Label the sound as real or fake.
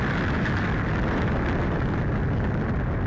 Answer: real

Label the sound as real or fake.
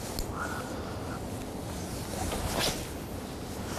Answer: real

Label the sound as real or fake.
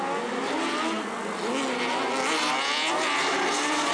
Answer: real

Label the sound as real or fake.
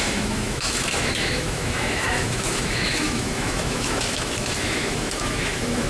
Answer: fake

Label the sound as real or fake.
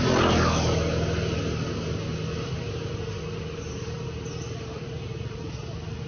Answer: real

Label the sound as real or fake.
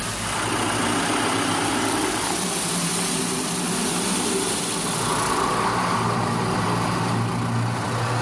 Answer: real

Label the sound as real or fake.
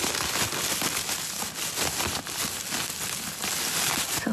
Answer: real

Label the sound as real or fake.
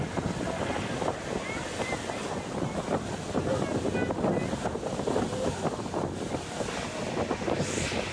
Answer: real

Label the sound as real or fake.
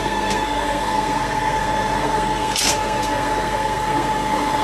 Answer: fake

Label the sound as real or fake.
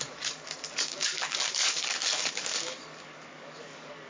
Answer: fake